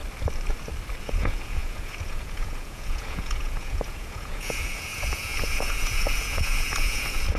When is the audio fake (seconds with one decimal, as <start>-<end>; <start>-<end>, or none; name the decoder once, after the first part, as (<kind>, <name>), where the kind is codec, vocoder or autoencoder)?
1.0-7.4 (vocoder, Vocos)